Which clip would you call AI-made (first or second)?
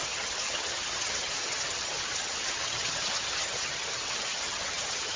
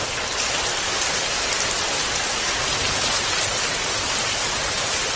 first